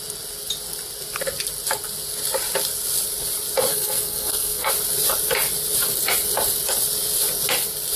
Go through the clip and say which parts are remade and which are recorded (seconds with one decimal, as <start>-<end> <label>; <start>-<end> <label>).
0.0-3.7 recorded; 3.7-4.7 remade; 4.7-8.0 recorded